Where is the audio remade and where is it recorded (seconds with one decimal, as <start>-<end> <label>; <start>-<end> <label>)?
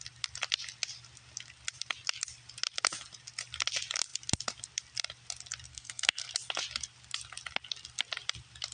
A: 0.0-5.7 recorded; 5.7-6.3 remade; 6.3-8.7 recorded